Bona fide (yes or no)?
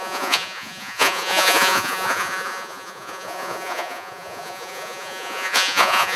no